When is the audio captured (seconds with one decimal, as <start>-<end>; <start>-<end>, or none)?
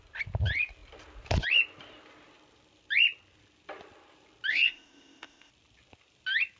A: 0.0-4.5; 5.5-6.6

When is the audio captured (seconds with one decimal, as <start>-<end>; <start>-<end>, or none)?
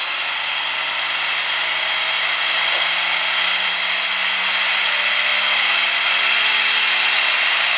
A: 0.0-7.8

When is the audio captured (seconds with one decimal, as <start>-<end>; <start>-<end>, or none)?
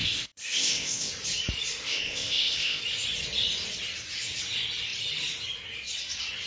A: 1.1-1.8; 2.8-6.5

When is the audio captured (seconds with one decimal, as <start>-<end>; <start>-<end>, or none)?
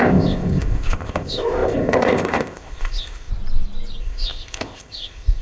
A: 3.3-4.0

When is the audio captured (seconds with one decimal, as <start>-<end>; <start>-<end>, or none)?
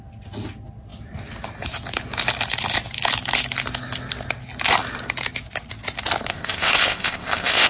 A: 0.0-6.3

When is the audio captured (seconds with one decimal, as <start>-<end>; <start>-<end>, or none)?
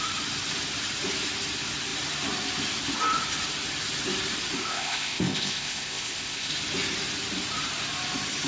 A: 0.0-4.6; 6.5-8.5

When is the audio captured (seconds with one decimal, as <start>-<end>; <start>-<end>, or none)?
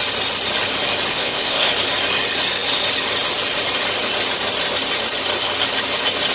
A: 0.0-1.1; 1.7-6.3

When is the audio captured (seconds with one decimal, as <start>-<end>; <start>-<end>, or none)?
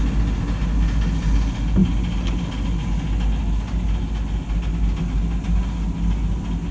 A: 0.0-6.7